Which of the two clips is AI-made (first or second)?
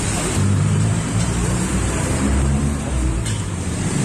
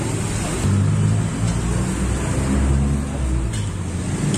first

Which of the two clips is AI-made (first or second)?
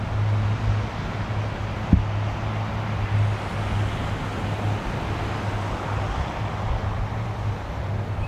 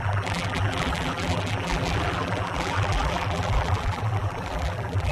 second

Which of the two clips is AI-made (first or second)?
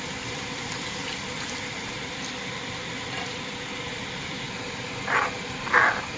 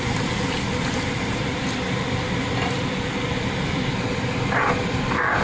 first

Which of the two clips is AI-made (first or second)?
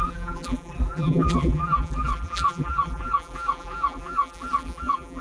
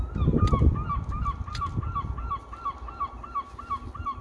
first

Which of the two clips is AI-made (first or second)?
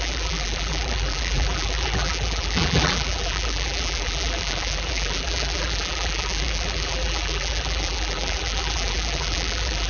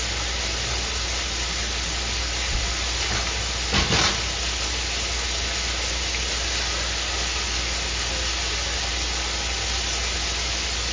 first